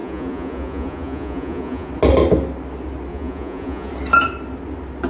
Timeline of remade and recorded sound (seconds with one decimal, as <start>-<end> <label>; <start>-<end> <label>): 0.0-1.9 remade; 1.9-3.1 recorded; 3.1-3.9 remade; 3.9-5.1 recorded

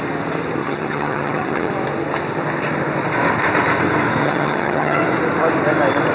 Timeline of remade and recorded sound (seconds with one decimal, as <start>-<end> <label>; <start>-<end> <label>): 0.0-0.6 recorded; 0.6-1.7 remade; 1.7-4.2 recorded; 4.2-5.0 remade; 5.0-6.1 recorded

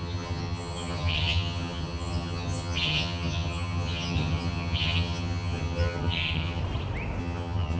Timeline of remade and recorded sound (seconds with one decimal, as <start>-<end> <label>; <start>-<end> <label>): 0.0-6.6 remade; 6.6-7.2 recorded; 7.2-7.8 remade